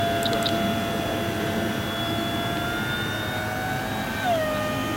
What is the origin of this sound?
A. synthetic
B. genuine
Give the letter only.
B